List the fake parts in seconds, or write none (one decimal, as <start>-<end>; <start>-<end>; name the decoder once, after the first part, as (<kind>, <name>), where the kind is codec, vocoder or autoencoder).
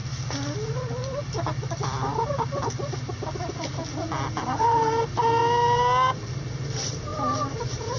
4.6-5.4 (vocoder, BigVGAN v2); 6.3-8.0